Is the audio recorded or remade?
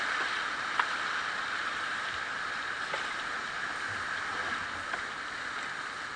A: recorded